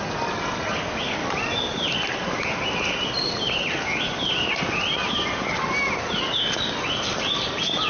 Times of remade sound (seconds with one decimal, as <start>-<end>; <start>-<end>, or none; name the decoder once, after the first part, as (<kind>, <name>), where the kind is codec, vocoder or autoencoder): none

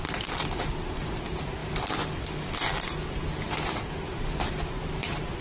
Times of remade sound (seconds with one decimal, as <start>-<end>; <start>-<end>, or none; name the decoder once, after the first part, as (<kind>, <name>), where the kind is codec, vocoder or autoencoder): 0.0-1.6 (vocoder, BigVGAN v2); 4.8-5.4

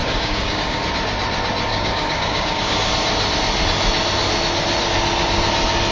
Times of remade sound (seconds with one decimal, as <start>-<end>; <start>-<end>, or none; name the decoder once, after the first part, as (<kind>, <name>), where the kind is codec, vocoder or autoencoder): 0.0-0.8 (codec, DAC); 1.7-2.6

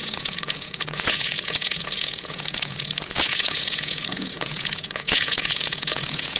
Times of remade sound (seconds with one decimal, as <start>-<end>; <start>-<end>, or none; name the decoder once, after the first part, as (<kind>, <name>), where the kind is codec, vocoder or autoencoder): 0.0-6.4 (vocoder, Vocos)

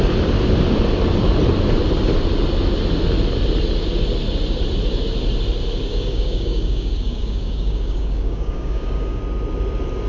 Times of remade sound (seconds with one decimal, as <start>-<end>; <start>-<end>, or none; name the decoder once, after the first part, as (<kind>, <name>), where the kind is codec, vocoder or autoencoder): 5.9-9.2 (codec, DAC)